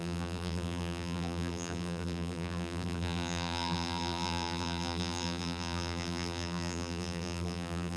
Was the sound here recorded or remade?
remade